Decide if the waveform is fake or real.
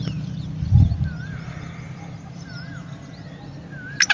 real